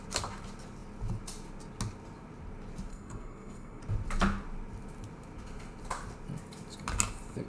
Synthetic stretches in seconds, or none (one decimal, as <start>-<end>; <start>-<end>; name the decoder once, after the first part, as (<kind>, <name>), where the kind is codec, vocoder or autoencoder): 2.9-3.8 (codec, SNAC)